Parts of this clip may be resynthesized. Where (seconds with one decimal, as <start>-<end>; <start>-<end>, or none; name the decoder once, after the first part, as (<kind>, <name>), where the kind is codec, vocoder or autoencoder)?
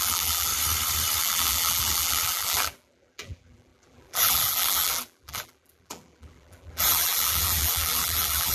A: 0.0-0.5 (vocoder, BigVGAN v2); 1.2-8.5